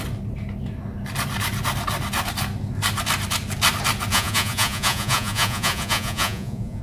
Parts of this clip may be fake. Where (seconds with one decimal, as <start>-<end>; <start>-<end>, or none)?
4.1-6.8